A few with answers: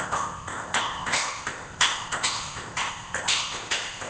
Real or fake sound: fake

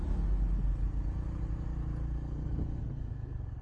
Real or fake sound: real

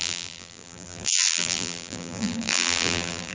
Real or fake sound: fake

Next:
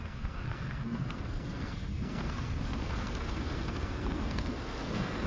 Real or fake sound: fake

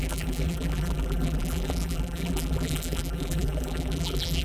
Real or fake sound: fake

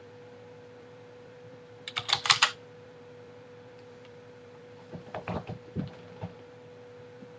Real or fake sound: fake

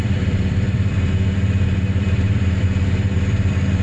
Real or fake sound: fake